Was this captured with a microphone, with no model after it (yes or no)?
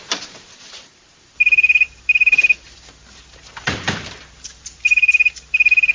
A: no